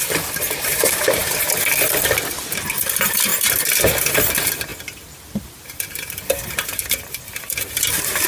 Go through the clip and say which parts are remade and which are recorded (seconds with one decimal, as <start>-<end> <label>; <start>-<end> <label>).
0.0-1.2 remade; 1.2-1.9 recorded; 1.9-3.3 remade; 3.3-4.1 recorded; 4.1-4.7 remade; 4.7-5.4 recorded; 5.4-8.3 remade